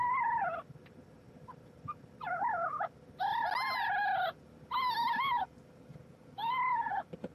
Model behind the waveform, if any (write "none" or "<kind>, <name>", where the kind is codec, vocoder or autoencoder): none